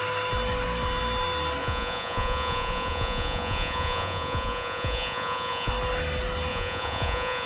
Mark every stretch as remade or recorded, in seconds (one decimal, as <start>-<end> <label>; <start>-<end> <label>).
0.0-1.6 recorded; 1.6-5.7 remade; 5.7-6.5 recorded; 6.5-7.5 remade